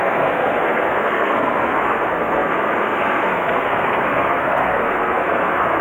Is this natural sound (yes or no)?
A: no